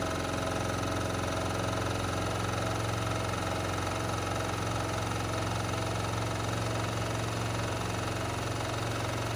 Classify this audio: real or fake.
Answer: real